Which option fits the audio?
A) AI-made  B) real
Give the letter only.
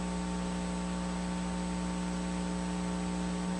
B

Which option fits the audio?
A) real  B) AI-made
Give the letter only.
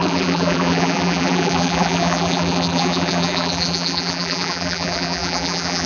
B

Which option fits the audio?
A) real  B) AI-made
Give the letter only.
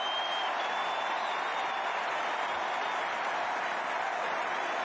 A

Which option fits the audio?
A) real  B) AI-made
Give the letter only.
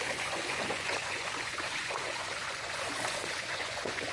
B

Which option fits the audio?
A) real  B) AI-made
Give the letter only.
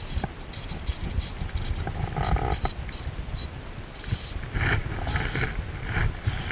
A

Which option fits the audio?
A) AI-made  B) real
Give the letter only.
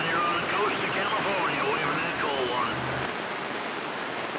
B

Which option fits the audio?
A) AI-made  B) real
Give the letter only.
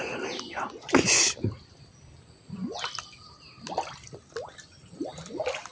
B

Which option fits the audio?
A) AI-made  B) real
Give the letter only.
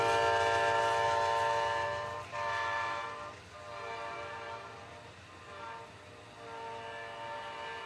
B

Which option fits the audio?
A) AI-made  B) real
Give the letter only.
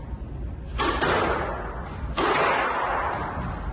B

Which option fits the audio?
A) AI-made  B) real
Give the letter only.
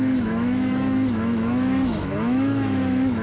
A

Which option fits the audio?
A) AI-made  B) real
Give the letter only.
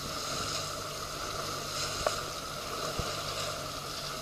B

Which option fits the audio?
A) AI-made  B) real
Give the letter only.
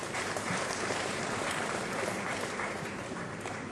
A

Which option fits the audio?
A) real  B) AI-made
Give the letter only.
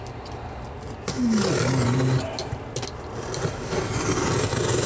A